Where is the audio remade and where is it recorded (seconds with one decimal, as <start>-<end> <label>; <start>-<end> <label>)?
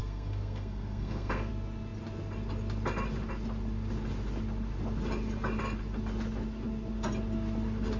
0.0-1.5 remade; 1.5-8.0 recorded